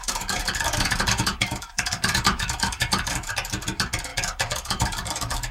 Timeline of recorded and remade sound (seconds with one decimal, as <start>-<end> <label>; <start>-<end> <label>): 0.0-3.3 remade; 3.3-4.1 recorded; 4.1-5.5 remade